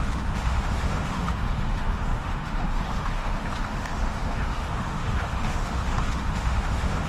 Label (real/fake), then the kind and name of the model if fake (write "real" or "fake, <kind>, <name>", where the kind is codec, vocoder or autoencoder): fake, autoencoder, DAC-VAE